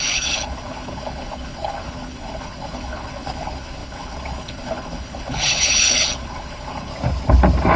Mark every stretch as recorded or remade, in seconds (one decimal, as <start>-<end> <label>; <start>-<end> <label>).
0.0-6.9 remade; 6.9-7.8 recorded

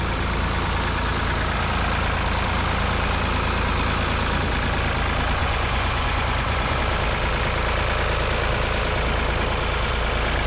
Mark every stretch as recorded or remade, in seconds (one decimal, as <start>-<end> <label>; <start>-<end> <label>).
0.0-5.4 recorded; 5.4-6.8 remade; 6.8-10.5 recorded

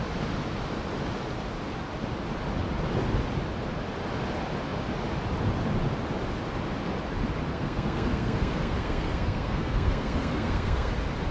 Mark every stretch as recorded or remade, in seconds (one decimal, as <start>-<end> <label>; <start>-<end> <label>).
0.0-7.5 recorded; 7.5-10.9 remade; 10.9-11.3 recorded

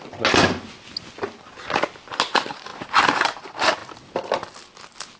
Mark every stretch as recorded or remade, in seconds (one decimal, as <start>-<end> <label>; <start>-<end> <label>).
0.0-5.2 recorded

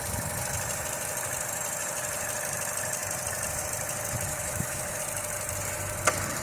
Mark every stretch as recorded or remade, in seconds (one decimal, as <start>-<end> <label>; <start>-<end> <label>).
0.0-4.3 recorded; 4.3-5.0 remade; 5.0-6.4 recorded

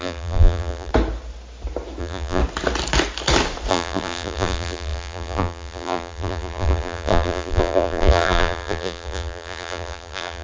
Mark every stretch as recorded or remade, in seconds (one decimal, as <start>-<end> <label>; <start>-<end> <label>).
0.0-0.9 remade; 0.9-2.0 recorded; 2.0-2.4 remade; 2.4-3.7 recorded; 3.7-10.4 remade